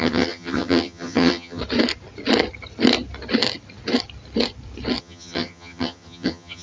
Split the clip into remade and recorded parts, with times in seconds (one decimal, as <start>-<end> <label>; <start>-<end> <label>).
0.0-1.6 remade; 1.6-5.0 recorded; 5.0-6.6 remade